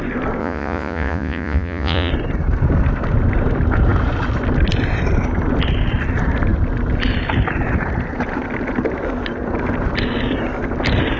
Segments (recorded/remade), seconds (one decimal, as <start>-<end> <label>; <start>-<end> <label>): 0.0-0.4 recorded; 0.4-2.1 remade; 2.1-11.2 recorded